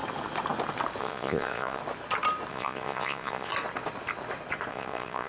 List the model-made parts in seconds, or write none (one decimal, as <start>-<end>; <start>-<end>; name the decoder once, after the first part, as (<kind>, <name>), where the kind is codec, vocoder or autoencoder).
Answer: 1.0-1.8 (vocoder, Vocos); 2.5-3.5; 4.7-5.3